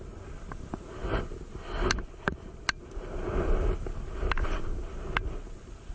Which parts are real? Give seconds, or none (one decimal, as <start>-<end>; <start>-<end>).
0.0-5.9